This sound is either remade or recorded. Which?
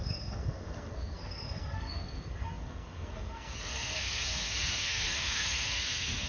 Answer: remade